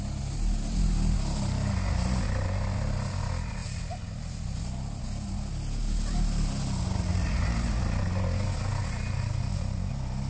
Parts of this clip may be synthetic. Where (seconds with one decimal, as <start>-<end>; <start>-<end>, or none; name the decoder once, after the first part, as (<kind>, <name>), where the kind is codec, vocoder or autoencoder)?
none